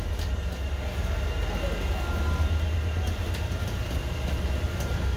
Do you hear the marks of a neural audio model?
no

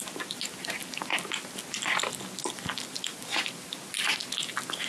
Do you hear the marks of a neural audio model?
no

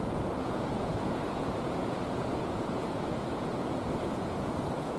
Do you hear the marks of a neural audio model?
yes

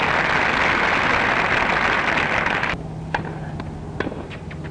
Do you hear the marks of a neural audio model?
no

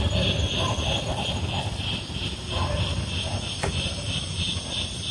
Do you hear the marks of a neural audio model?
no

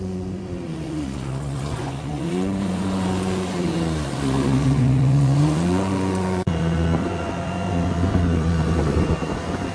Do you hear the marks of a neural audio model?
yes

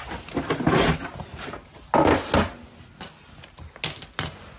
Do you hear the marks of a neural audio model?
no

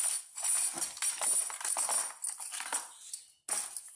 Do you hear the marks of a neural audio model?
no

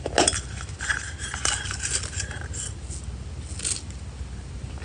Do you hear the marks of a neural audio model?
no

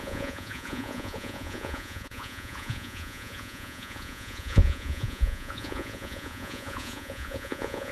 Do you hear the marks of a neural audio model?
yes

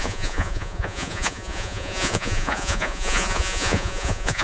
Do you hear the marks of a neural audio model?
yes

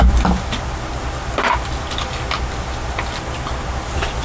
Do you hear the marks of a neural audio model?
no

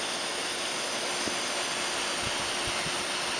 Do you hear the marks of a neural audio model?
no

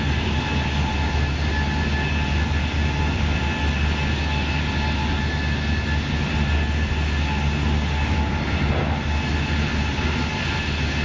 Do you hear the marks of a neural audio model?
no